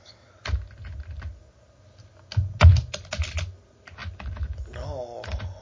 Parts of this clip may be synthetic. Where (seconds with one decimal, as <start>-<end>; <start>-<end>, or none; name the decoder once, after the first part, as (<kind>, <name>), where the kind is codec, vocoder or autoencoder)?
none